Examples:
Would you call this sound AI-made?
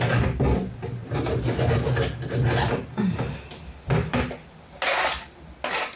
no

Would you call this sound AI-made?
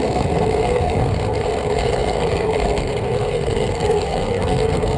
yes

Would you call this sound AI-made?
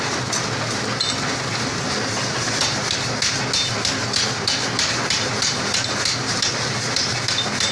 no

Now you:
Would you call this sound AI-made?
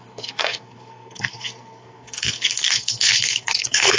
yes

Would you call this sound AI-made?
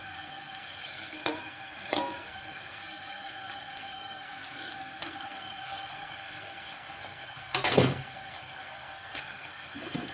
yes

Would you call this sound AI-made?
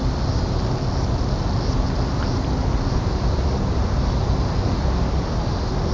no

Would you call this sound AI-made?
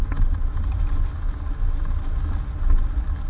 no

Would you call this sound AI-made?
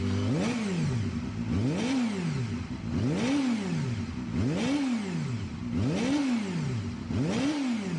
no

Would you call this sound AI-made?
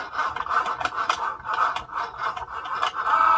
no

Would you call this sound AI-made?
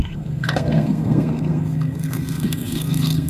yes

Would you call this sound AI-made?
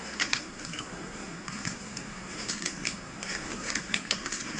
yes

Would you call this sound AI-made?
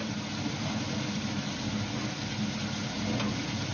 no